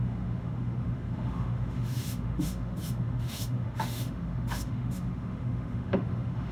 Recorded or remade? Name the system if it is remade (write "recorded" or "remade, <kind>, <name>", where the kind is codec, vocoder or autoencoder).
remade, autoencoder, DAC-VAE